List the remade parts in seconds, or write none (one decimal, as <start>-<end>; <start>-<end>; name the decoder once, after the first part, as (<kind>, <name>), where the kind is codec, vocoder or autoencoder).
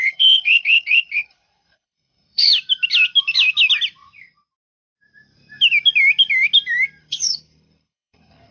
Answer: 0.0-2.5 (codec, HILCodec); 7.0-8.5